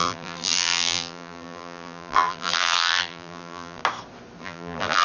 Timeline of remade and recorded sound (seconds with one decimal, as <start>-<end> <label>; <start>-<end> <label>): 0.0-3.8 remade; 3.8-4.4 recorded; 4.4-5.0 remade